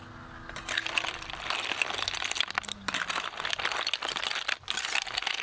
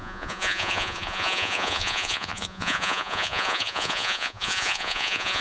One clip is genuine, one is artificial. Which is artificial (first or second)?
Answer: second